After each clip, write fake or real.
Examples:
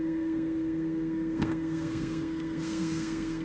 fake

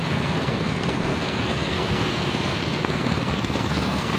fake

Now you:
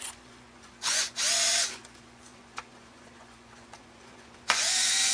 fake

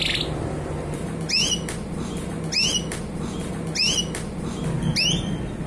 real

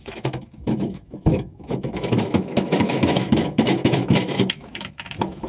fake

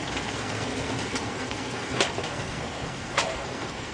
fake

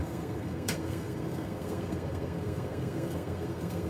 fake